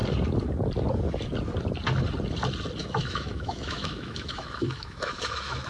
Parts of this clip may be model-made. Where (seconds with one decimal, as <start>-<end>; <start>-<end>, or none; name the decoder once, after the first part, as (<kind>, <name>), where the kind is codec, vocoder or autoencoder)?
2.8-5.7 (autoencoder, DAC-VAE)